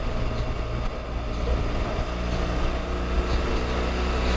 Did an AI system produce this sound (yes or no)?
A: no